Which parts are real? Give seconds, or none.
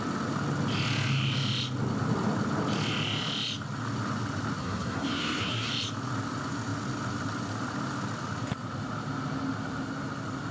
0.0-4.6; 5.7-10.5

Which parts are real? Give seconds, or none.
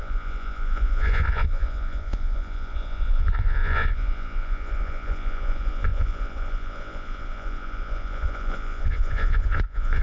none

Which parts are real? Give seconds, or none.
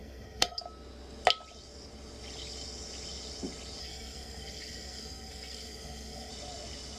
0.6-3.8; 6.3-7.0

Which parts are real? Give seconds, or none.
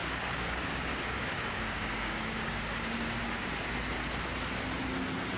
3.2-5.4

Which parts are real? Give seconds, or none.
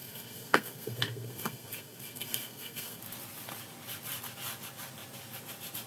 3.0-5.9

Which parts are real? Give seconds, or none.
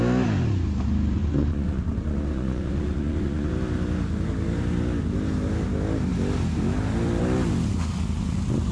0.0-1.2; 3.5-8.7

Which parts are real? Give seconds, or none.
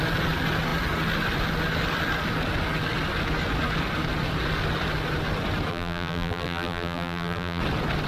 0.0-5.7; 7.6-8.1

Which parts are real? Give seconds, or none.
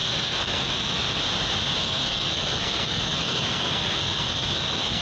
1.2-1.8